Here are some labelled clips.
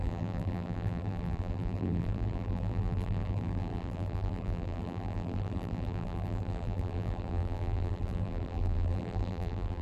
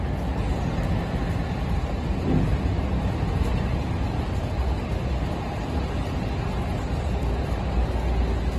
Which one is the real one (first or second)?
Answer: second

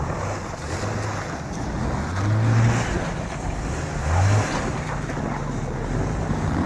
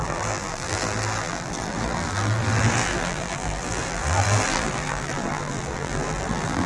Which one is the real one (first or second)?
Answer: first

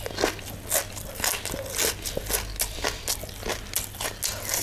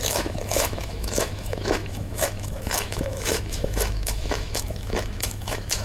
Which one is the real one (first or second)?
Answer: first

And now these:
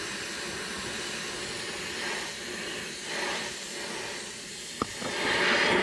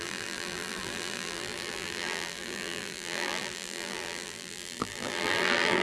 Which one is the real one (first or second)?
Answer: first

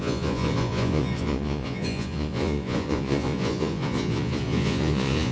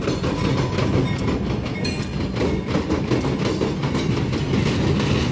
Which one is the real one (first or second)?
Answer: second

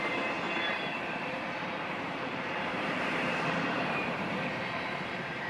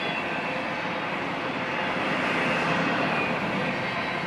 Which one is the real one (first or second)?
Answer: second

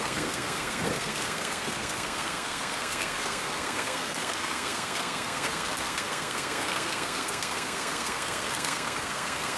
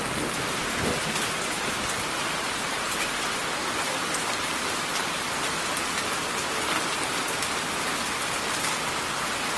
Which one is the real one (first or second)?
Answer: second